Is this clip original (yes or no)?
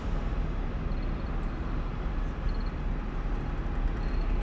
yes